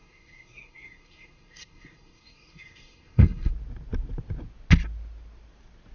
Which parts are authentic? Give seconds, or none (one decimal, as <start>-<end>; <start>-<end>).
3.5-5.9